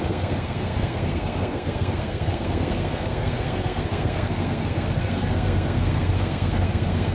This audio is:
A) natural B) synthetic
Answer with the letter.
B